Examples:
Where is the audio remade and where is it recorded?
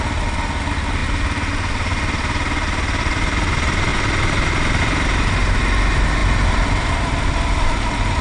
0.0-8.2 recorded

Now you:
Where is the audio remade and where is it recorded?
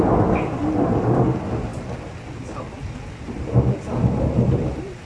0.0-5.1 recorded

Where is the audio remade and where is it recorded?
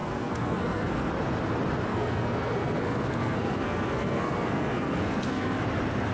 0.0-1.1 remade; 1.1-1.9 recorded; 1.9-5.6 remade; 5.6-6.1 recorded